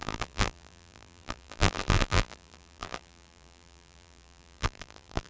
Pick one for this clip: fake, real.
fake